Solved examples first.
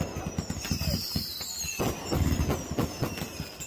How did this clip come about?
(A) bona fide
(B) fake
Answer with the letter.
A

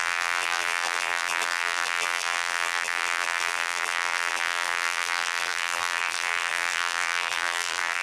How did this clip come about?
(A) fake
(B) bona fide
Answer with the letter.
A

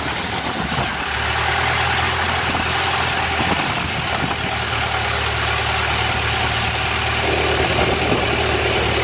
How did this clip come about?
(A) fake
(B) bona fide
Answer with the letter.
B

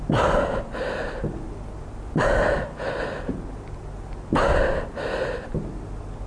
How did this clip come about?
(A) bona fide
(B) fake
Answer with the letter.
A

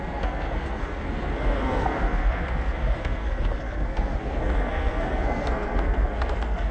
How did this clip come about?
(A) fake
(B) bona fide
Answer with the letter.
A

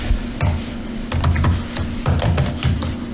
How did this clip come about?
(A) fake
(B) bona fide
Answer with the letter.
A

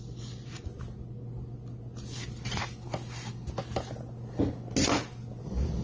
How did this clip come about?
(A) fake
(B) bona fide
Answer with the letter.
B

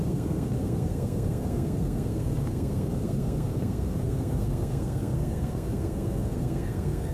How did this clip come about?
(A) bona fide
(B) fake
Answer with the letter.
B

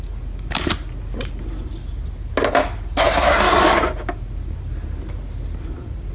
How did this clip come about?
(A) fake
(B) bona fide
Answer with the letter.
B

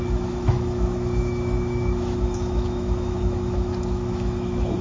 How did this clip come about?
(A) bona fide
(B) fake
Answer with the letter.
B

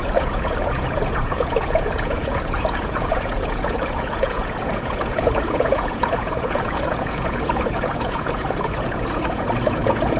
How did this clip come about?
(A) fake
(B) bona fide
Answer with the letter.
A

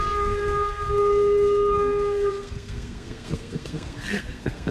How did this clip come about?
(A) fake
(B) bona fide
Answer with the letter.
A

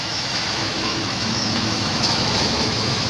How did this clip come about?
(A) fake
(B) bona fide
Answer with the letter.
A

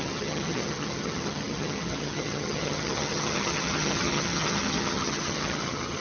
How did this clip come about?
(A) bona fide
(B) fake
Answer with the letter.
B